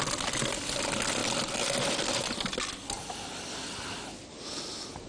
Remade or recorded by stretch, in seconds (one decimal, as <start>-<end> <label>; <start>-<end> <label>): 0.0-5.1 recorded

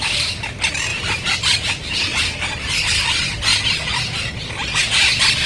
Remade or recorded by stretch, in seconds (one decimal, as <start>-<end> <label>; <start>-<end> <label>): 0.0-0.9 recorded; 0.9-1.7 remade; 1.7-5.5 recorded

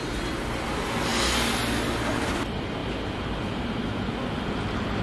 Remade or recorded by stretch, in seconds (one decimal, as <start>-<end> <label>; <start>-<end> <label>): 0.0-5.0 recorded

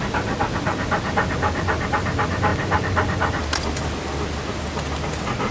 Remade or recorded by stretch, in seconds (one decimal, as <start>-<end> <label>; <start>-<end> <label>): 0.0-5.5 recorded

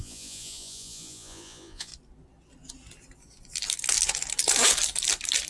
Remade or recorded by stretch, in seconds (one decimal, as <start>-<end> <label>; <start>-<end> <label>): 0.0-1.9 remade; 1.9-5.5 recorded